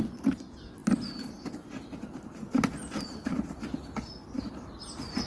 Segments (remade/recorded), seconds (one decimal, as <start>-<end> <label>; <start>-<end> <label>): 0.0-5.3 recorded

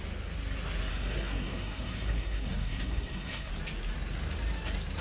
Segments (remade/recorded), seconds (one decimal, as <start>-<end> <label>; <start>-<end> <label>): 0.0-0.9 recorded; 0.9-3.5 remade; 3.5-5.0 recorded

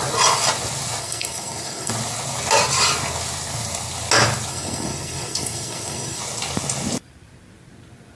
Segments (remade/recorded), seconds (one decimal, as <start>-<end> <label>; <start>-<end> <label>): 0.0-1.0 recorded; 1.0-1.9 remade; 1.9-4.5 recorded; 4.5-6.2 remade; 6.2-8.2 recorded

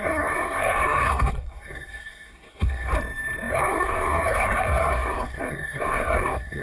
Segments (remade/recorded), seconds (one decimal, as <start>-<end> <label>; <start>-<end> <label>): 0.0-2.9 remade; 2.9-3.5 recorded; 3.5-6.6 remade

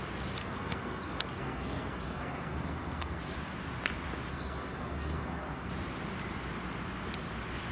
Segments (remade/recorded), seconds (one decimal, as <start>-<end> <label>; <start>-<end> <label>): 0.0-0.4 recorded; 0.4-3.2 remade; 3.2-4.3 recorded; 4.3-5.7 remade; 5.7-7.7 recorded